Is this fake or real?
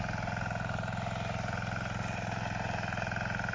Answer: real